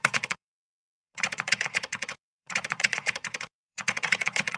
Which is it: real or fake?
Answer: fake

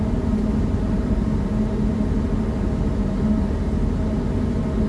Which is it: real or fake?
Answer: real